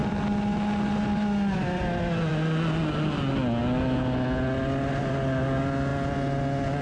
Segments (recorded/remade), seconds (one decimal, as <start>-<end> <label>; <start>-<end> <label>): 0.0-6.8 recorded